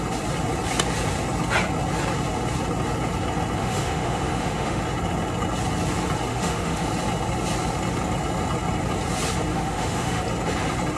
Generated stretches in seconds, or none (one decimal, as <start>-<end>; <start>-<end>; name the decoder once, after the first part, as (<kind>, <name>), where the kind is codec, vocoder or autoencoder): 3.6-4.8 (autoencoder, DAC-VAE); 6.3-6.9; 9.5-10.2